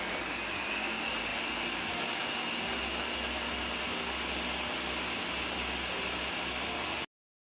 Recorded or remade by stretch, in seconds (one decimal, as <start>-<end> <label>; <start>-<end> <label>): 0.0-7.6 recorded